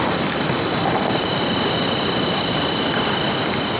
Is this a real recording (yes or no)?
yes